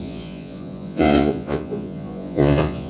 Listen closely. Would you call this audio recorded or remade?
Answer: remade